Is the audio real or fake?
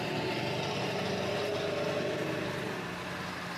real